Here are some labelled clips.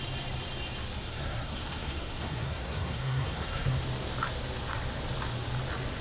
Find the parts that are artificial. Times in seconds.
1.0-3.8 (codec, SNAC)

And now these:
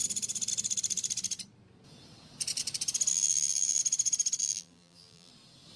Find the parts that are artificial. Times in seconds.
3.1-3.8 (vocoder, BigVGAN v2); 4.4-5.3

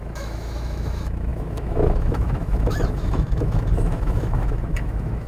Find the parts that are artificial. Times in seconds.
0.0-5.3 (autoencoder, DAC-VAE)

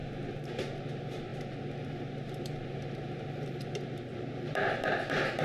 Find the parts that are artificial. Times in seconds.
0.0-5.4 (vocoder, BigVGAN v2)

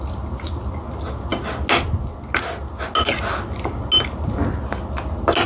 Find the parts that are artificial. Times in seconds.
none

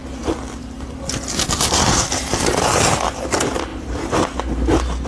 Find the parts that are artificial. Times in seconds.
3.7-4.4 (vocoder, BigVGAN v2)

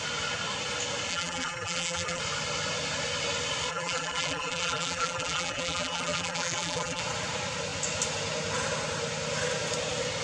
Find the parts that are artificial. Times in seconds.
1.1-2.2 (vocoder, BigVGAN v2); 3.7-7.0

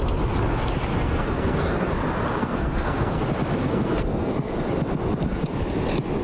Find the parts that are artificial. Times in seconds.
0.9-1.9 (codec, SNAC); 2.4-3.2; 3.6-4.3